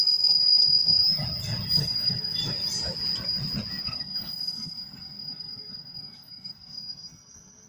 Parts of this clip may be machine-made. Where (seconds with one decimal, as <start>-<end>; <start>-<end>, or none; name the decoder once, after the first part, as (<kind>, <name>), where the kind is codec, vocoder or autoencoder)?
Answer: 0.0-1.0 (codec, SNAC); 1.7-2.4; 3.8-7.7